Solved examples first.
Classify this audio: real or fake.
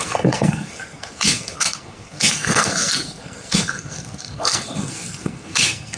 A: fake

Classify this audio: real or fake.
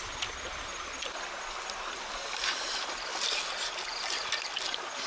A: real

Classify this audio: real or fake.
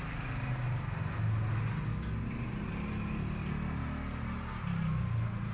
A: real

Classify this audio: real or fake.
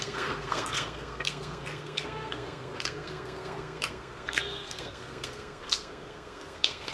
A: fake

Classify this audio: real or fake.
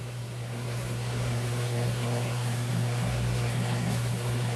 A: fake